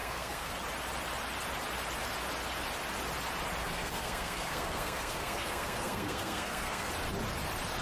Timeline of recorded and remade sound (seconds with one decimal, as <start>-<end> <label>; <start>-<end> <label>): 0.0-0.5 remade; 0.5-3.6 recorded; 3.6-6.9 remade; 6.9-7.8 recorded